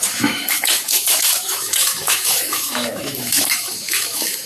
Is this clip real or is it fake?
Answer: fake